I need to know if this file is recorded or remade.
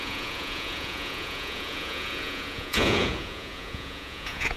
remade